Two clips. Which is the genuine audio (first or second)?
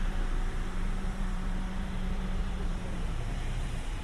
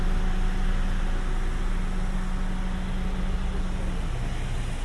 second